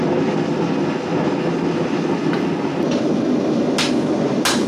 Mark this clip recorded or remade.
recorded